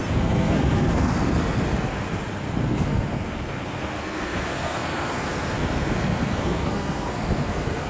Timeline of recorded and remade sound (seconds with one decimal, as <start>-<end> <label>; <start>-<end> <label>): 0.0-1.1 remade; 1.1-2.7 recorded; 2.7-7.9 remade